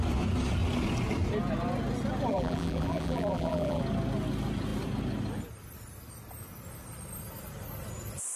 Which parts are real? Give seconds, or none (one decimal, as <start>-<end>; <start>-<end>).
0.0-2.3; 3.8-8.4